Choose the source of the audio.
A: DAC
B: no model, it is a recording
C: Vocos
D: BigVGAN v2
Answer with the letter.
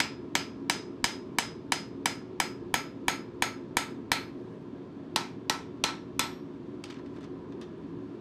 B